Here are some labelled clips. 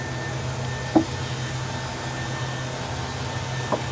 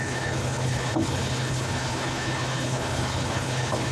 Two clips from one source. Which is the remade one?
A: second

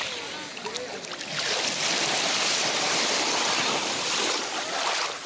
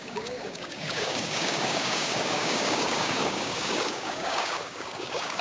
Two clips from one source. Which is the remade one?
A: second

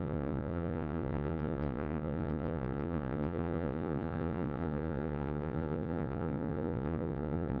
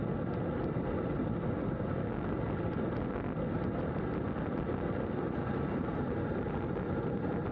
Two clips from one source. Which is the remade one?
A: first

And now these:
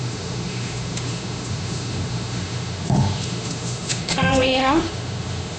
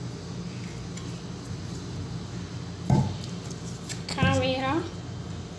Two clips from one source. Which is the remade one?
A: first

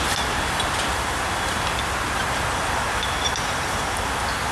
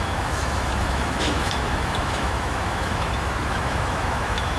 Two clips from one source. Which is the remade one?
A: second